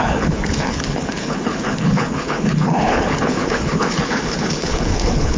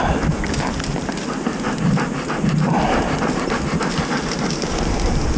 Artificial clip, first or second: first